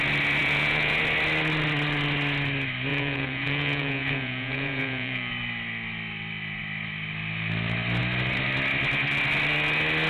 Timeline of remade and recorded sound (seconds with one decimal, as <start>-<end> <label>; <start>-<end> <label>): 0.0-0.4 recorded; 0.4-1.0 remade; 1.0-2.9 recorded; 2.9-5.3 remade; 5.3-10.1 recorded